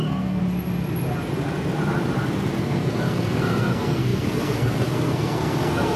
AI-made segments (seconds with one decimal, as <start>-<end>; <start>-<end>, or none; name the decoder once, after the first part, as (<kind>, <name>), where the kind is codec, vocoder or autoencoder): 0.0-0.4 (codec, SNAC); 2.6-6.0